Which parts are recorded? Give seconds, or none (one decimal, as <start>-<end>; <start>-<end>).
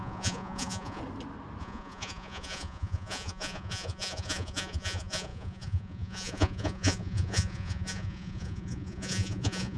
1.0-1.6